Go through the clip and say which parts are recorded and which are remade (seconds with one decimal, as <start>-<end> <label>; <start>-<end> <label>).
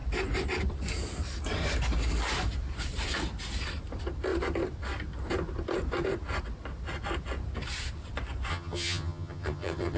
0.0-8.5 recorded; 8.5-10.0 remade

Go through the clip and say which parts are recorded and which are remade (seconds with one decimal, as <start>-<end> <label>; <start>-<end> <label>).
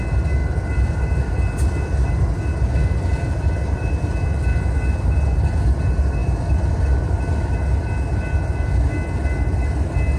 0.0-10.2 recorded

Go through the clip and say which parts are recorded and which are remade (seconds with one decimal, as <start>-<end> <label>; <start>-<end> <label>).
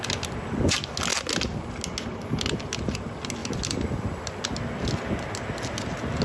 0.0-6.2 recorded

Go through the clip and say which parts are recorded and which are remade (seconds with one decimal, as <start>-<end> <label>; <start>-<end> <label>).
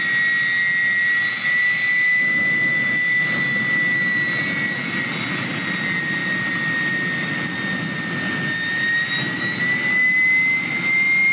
0.0-11.3 recorded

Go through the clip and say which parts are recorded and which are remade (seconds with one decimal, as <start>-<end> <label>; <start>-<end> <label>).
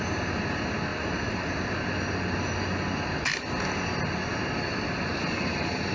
0.0-5.9 recorded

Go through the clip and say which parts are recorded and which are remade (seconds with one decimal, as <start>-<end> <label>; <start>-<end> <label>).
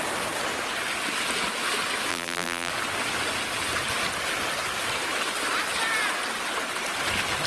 0.0-2.1 recorded; 2.1-2.7 remade; 2.7-7.5 recorded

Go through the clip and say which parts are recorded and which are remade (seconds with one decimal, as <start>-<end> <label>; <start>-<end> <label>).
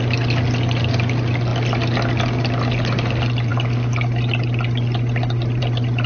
0.0-6.1 recorded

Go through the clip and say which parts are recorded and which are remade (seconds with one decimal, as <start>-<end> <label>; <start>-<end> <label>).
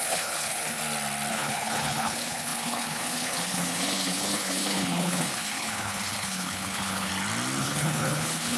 0.0-0.8 remade; 0.8-1.3 recorded; 1.3-7.1 remade; 7.1-7.6 recorded; 7.6-8.6 remade